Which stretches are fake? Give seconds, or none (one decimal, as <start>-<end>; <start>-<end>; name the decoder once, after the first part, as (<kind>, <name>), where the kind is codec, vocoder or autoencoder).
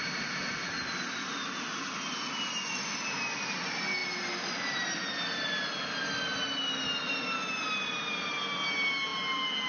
none